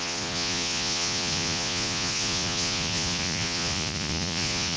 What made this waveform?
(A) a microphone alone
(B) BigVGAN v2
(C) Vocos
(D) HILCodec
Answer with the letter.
C